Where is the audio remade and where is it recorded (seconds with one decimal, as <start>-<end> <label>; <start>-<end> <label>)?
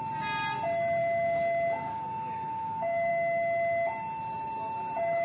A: 0.0-1.0 recorded; 1.0-3.1 remade; 3.1-5.2 recorded